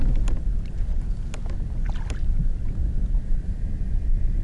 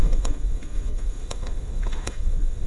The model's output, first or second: second